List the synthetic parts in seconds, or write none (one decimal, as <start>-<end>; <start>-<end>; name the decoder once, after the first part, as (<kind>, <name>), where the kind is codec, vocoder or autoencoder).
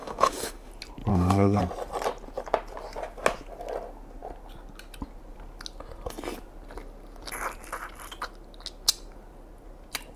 0.0-0.7 (autoencoder, DAC-VAE); 1.1-1.6